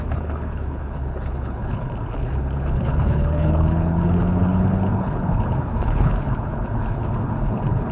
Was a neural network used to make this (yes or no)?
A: yes